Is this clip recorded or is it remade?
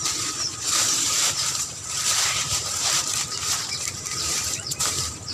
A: remade